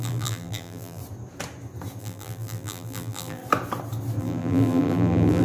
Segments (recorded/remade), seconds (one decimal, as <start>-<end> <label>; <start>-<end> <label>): 0.0-1.0 remade; 1.0-2.0 recorded; 2.0-3.4 remade; 3.4-4.2 recorded; 4.2-5.4 remade